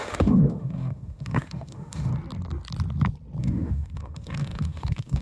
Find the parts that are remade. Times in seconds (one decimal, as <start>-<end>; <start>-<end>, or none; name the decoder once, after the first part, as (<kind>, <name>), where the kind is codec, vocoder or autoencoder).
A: 0.0-2.1 (autoencoder, DAC-VAE); 3.4-5.2